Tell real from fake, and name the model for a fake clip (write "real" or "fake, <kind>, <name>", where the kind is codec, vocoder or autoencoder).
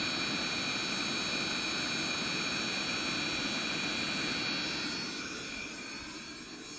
real